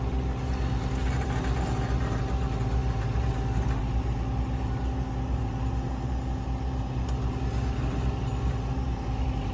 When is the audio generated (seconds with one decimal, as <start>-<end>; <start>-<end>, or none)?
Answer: none